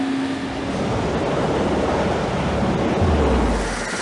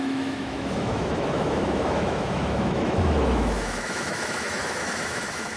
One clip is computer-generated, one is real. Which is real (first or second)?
first